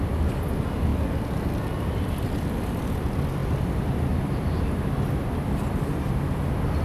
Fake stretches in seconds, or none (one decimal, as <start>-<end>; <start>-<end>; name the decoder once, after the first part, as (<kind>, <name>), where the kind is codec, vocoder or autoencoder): none